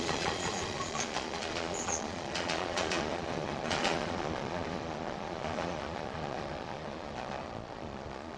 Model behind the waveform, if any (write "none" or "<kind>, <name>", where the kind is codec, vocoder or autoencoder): vocoder, Vocos